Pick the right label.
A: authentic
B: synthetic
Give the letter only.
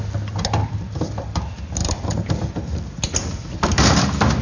A